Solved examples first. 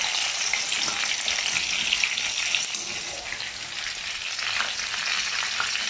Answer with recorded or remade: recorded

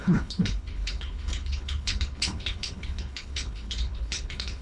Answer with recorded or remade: remade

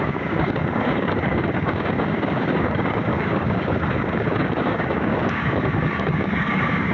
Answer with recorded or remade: remade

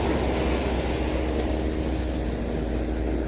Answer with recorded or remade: recorded